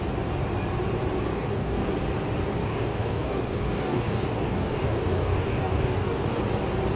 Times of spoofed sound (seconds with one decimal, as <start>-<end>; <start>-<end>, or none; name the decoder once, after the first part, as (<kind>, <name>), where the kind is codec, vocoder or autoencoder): 1.3-1.9 (codec, DAC); 2.6-6.4